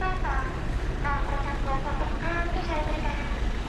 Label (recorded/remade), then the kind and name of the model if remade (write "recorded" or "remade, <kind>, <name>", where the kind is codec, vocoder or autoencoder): recorded